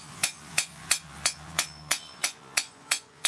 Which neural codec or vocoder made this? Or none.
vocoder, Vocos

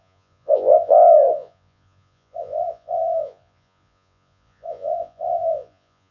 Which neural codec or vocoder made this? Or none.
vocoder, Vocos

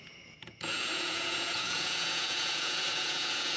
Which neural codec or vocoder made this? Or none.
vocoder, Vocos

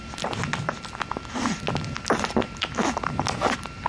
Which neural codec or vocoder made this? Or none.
none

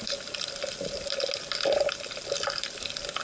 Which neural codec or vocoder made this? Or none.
none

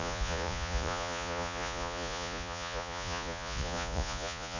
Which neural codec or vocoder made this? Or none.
vocoder, Vocos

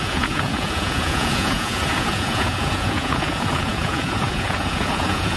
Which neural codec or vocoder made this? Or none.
vocoder, Vocos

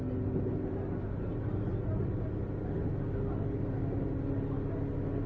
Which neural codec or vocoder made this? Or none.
none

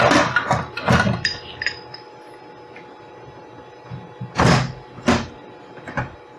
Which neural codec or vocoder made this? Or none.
none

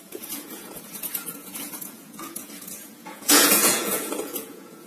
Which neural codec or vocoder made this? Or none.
vocoder, Vocos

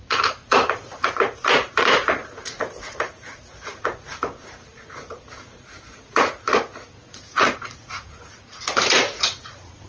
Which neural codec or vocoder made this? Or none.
vocoder, Vocos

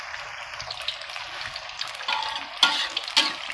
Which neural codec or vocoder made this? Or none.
none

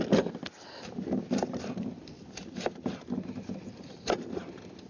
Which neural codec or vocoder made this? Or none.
none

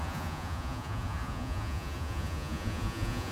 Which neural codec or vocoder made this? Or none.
vocoder, Vocos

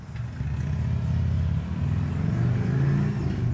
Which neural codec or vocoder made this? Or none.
none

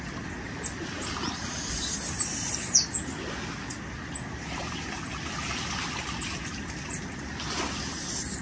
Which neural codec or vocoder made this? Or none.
none